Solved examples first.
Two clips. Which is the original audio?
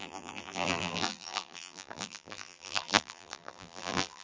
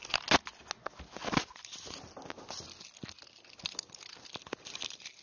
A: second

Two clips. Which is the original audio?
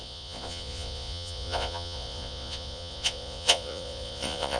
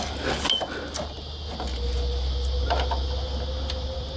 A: second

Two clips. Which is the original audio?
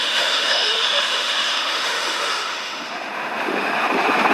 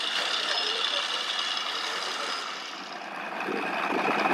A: second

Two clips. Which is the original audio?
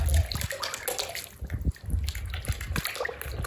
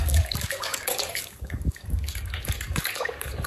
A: first